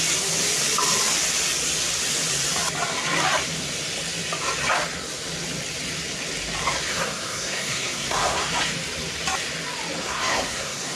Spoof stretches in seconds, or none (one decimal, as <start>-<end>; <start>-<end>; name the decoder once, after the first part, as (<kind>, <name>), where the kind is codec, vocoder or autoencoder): 6.9-8.5 (codec, SNAC); 10.0-11.0